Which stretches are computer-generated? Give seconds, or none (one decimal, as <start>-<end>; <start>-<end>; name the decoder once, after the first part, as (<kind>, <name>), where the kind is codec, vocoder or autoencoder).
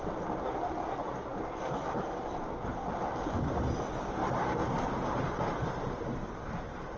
4.2-7.0 (vocoder, BigVGAN v2)